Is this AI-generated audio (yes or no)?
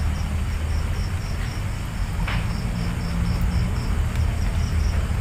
no